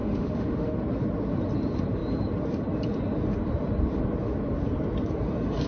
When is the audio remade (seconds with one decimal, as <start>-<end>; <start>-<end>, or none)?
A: 0.0-0.8